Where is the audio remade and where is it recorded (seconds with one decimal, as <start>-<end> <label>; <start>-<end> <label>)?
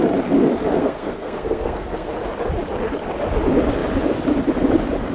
0.0-0.8 recorded; 0.8-2.1 remade; 2.1-5.1 recorded